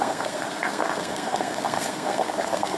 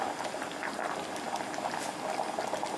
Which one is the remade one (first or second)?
first